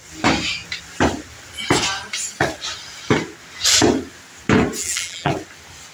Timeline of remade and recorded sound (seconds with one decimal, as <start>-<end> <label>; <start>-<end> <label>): 0.0-4.8 recorded; 4.8-5.3 remade; 5.3-5.9 recorded